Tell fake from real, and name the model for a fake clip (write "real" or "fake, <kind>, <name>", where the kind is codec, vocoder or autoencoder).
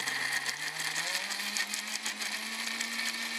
real